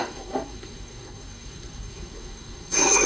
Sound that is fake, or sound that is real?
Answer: fake